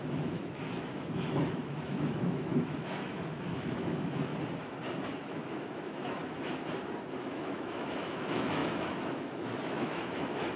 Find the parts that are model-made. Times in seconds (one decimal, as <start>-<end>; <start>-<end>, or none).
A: 0.0-4.3; 5.2-6.2; 7.2-10.6